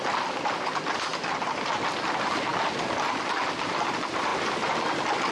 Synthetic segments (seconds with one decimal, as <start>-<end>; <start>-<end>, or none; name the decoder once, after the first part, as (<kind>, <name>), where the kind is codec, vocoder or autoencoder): none